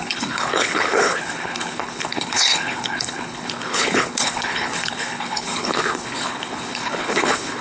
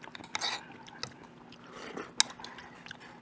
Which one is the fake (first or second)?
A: first